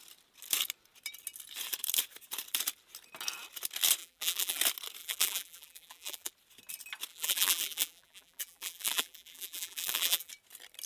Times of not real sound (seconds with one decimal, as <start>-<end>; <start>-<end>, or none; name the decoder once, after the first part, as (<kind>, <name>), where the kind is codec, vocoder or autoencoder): 4.0-4.6 (vocoder, BigVGAN v2); 5.0-6.3; 7.1-10.3